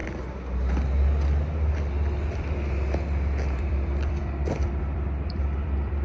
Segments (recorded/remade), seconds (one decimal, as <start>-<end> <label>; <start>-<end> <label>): 0.0-3.6 recorded; 3.6-6.0 remade